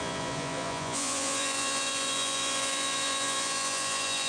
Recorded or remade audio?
remade